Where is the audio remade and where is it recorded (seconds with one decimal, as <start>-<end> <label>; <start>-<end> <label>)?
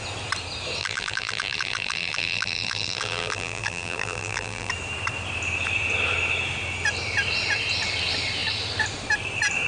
0.0-0.8 recorded; 0.8-4.7 remade; 4.7-9.7 recorded